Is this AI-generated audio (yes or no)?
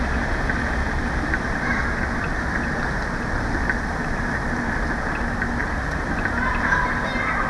no